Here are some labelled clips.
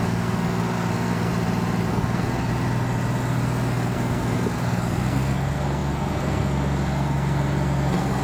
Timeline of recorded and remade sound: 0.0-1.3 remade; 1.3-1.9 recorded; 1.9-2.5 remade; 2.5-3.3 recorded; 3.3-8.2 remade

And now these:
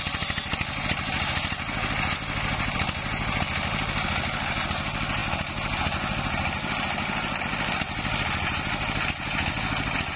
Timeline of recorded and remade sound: 0.0-10.2 recorded

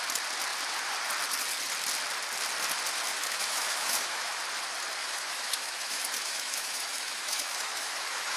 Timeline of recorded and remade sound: 0.0-3.1 recorded; 3.1-4.4 remade; 4.4-5.0 recorded; 5.0-8.4 remade

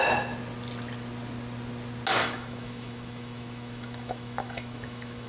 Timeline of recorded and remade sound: 0.0-2.2 recorded; 2.2-5.3 remade

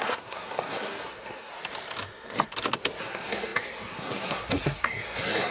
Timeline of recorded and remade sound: 0.0-1.5 remade; 1.5-3.0 recorded; 3.0-5.5 remade

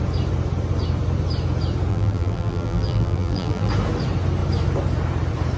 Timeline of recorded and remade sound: 0.0-1.9 recorded; 1.9-3.7 remade; 3.7-5.6 recorded

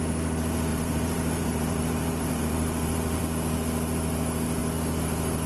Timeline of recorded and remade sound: 0.0-0.7 recorded; 0.7-3.2 remade; 3.2-5.5 recorded

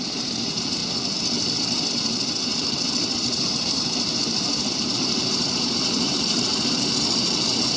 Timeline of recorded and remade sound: 0.0-0.8 remade; 0.8-1.9 recorded; 1.9-7.8 remade